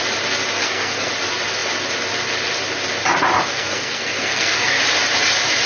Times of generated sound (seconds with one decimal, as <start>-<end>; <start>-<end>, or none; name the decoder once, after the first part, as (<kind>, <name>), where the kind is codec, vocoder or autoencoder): 0.6-1.1 (codec, SNAC); 3.5-4.8